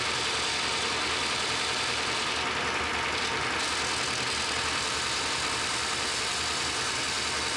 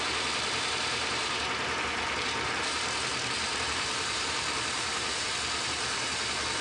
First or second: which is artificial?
second